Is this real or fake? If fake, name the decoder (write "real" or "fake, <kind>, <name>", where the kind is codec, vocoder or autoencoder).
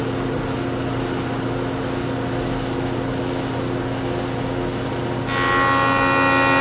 real